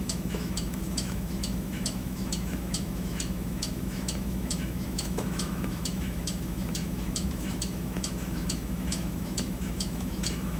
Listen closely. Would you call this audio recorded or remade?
remade